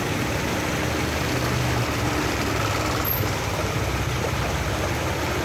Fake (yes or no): no